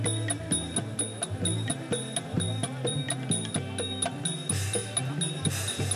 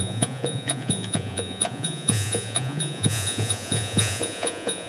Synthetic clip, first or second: second